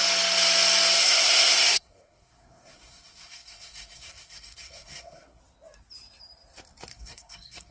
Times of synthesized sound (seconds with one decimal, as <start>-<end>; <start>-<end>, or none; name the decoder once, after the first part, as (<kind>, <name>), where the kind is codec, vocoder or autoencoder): 1.0-5.4 (codec, SNAC); 6.9-7.7